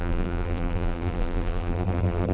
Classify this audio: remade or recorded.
remade